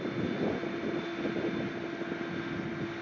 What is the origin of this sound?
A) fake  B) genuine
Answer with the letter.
B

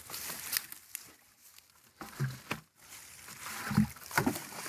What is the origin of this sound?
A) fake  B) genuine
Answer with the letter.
B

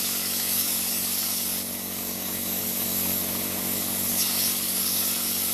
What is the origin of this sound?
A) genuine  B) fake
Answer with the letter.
B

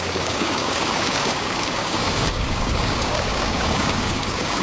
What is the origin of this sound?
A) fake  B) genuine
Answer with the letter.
A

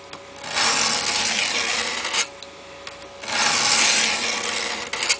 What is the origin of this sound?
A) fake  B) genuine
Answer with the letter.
B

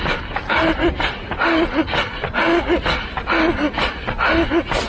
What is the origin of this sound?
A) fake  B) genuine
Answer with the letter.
B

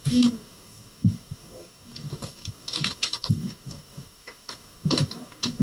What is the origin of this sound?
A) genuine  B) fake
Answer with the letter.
B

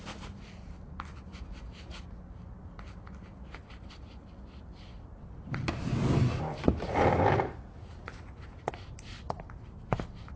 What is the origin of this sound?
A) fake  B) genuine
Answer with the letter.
B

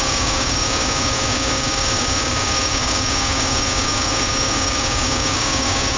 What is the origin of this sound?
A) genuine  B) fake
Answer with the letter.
B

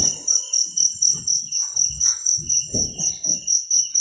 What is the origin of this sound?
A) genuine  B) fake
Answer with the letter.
A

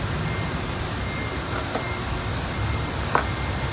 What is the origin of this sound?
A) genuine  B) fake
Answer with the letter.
A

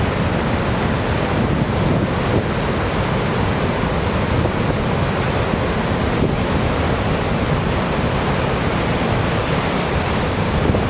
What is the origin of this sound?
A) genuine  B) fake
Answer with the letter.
A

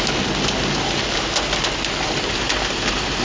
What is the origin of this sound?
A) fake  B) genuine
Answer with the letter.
B